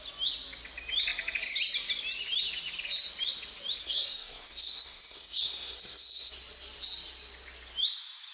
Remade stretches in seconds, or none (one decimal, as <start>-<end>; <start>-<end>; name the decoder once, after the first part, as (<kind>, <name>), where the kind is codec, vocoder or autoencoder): 3.8-6.3 (codec, SNAC)